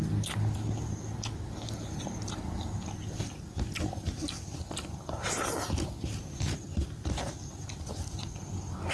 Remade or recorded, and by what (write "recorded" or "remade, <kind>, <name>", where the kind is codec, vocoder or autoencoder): recorded